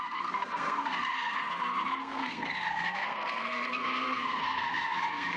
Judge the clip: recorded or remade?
remade